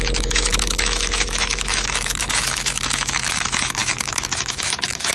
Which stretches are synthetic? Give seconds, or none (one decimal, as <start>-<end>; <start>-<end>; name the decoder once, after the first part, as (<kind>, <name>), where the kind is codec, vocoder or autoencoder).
0.0-5.1 (autoencoder, DAC-VAE)